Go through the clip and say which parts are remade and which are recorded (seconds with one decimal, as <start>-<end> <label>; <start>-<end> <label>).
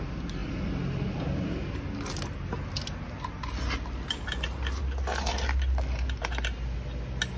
0.0-7.4 recorded